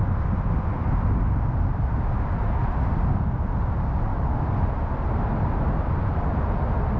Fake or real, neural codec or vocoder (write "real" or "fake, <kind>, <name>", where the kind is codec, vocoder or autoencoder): real